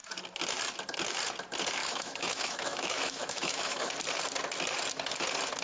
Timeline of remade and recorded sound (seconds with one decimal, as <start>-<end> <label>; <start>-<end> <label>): 0.0-1.8 recorded; 1.8-3.9 remade; 3.9-5.6 recorded